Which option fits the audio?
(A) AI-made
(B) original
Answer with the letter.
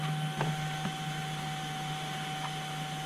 B